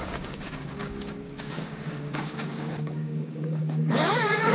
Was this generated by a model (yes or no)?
yes